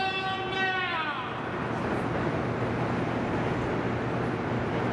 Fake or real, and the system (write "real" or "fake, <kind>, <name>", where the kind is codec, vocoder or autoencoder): real